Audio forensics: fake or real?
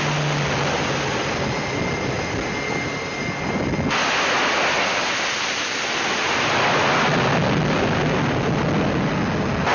real